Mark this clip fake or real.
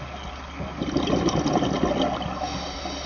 real